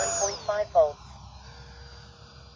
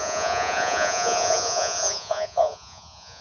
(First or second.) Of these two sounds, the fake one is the second